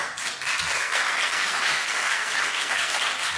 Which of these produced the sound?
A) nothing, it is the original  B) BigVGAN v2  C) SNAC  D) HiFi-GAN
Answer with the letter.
C